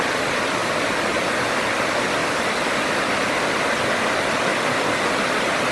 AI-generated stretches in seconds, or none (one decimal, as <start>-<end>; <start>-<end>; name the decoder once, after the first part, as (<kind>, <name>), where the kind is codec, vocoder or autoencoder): 0.6-1.3 (vocoder, BigVGAN v2); 2.2-3.7